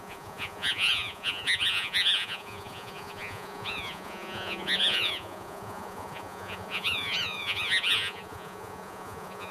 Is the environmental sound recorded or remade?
remade